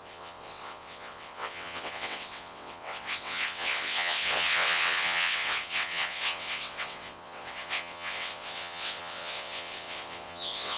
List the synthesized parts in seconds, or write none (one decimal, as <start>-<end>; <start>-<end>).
0.0-10.8